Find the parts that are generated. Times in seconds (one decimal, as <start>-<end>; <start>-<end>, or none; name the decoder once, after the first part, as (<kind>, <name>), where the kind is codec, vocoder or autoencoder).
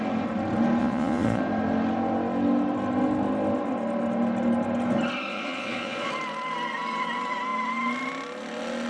0.8-1.4 (vocoder, Vocos); 5.3-6.1